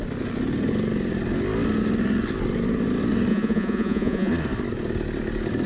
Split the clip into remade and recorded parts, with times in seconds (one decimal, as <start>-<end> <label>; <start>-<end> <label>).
0.0-3.3 recorded; 3.3-4.3 remade; 4.3-5.7 recorded